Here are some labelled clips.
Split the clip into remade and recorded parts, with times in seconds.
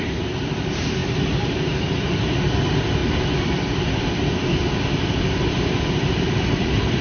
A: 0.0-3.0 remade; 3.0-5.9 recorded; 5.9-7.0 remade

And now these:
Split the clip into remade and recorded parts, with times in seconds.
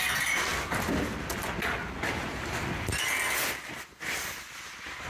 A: 0.0-5.1 recorded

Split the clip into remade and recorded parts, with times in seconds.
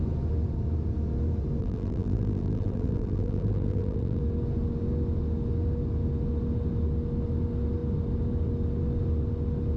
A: 0.0-1.6 recorded; 1.6-4.2 remade; 4.2-9.8 recorded